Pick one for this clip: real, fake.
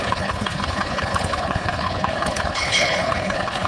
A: fake